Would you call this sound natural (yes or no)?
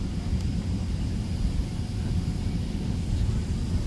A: yes